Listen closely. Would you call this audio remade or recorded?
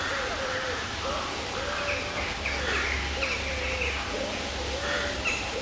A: recorded